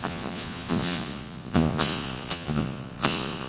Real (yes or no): no